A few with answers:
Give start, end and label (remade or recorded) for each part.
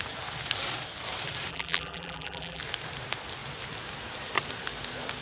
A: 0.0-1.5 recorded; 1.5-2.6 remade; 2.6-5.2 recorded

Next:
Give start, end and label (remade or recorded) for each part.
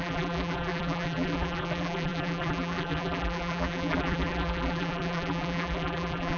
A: 0.0-6.4 remade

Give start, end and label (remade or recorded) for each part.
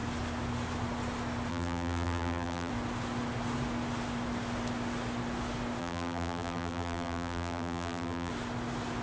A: 0.0-1.5 recorded; 1.5-2.7 remade; 2.7-5.8 recorded; 5.8-8.3 remade; 8.3-9.0 recorded